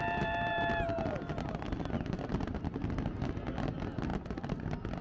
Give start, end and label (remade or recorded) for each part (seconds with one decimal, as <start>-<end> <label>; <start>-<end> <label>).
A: 0.0-5.0 recorded